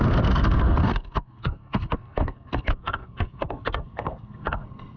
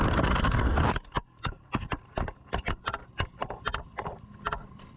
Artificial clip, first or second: first